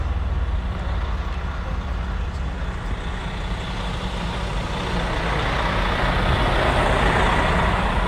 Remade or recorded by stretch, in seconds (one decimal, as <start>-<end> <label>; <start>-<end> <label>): 0.0-8.1 recorded